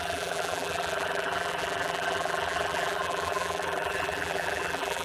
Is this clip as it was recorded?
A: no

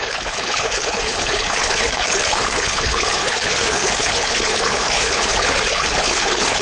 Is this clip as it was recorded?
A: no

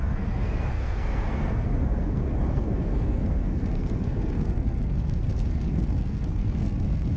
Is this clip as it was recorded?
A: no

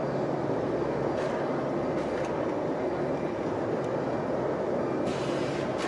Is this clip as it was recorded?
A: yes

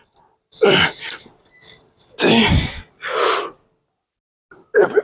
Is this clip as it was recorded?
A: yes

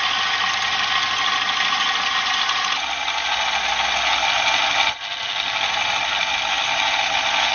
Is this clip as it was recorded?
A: yes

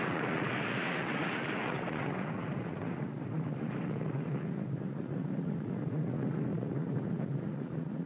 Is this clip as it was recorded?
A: no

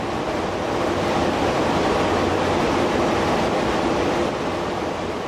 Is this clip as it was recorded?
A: yes